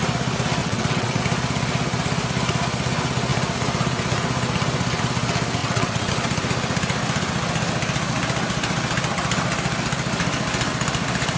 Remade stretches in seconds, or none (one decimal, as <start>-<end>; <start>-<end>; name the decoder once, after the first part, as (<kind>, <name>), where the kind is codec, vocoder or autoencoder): 0.6-1.2 (vocoder, WaveNeXt); 5.6-6.1